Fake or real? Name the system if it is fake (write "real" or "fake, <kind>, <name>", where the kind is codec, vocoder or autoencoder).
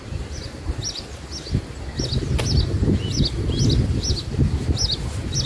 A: real